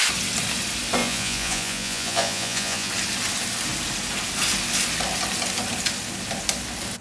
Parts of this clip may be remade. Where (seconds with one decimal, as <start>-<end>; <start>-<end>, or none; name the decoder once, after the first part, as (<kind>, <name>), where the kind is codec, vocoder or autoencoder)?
1.0-2.9 (vocoder, Vocos)

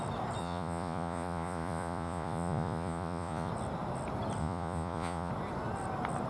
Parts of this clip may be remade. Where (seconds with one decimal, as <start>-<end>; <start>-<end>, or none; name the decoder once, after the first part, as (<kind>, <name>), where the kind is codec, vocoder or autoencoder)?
0.4-3.5 (vocoder, Vocos); 4.4-5.3

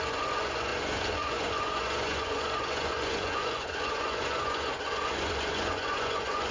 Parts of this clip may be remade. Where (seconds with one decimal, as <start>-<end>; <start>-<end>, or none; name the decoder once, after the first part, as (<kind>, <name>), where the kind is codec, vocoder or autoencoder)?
0.0-6.5 (vocoder, Vocos)

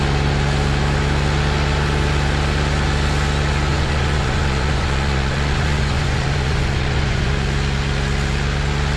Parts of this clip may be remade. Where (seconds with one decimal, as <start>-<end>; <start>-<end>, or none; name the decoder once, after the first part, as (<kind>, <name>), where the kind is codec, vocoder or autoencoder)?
3.7-7.3 (vocoder, Vocos)